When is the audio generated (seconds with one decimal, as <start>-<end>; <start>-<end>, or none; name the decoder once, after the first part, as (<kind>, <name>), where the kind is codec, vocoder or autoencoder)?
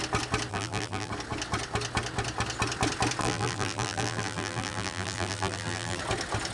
0.5-1.1 (vocoder, BigVGAN v2); 3.2-6.0